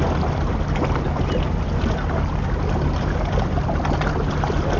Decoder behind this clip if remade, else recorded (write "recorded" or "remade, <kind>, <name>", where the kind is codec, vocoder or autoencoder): recorded